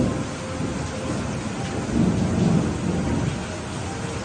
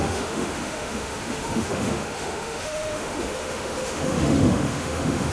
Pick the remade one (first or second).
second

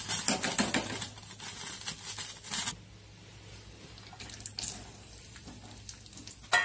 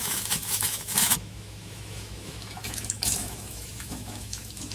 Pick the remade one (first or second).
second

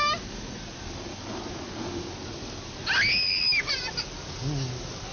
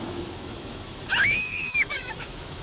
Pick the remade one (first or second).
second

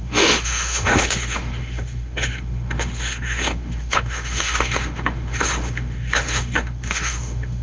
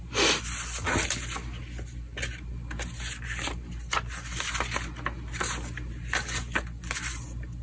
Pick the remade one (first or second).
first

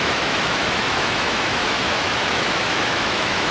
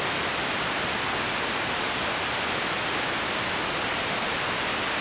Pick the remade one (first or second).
first